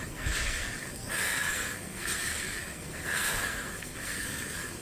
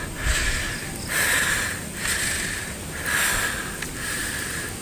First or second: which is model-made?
first